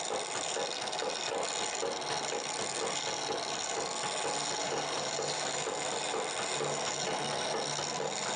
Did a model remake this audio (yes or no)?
no